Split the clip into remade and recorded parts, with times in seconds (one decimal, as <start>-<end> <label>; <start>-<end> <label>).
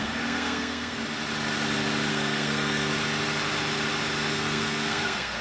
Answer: 0.0-1.0 remade; 1.0-2.1 recorded; 2.1-2.9 remade; 2.9-4.3 recorded; 4.3-5.4 remade